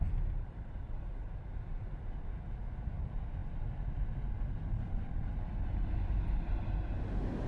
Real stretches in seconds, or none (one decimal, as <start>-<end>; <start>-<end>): 0.0-7.5